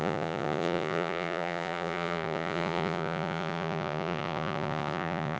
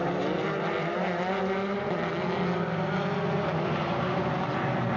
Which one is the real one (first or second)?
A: second